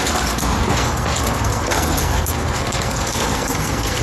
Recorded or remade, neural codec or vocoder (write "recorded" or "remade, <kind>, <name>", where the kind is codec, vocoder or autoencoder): remade, codec, SNAC